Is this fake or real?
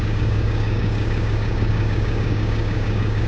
fake